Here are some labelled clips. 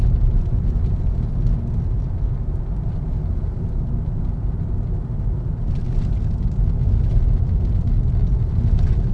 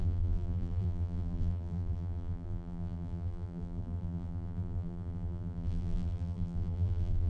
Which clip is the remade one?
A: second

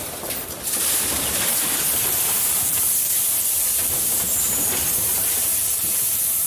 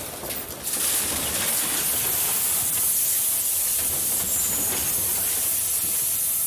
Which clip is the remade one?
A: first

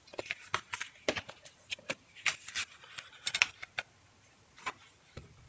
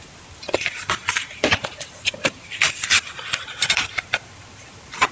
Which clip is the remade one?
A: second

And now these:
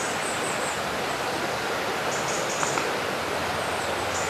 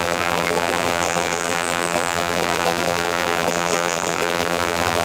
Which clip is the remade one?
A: second